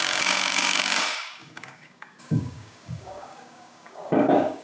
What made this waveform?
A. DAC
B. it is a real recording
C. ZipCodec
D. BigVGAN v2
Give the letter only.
A